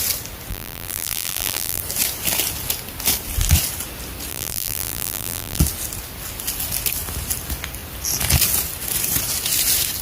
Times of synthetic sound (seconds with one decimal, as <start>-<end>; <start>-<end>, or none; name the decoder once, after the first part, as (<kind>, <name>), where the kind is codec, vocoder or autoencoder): 0.5-1.8 (vocoder, BigVGAN v2); 4.3-5.6

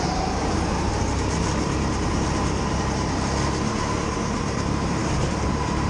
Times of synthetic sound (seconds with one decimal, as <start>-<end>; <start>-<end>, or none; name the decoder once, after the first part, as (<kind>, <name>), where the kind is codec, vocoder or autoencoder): 0.0-0.9 (vocoder, BigVGAN v2); 4.4-5.9